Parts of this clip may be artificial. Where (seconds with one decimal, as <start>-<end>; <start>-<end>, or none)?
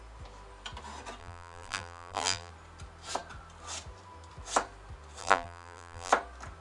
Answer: 1.2-2.5; 5.2-6.1